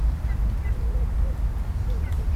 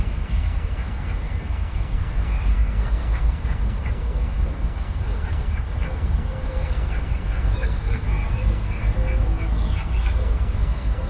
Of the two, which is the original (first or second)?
first